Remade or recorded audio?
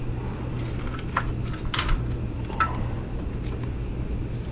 remade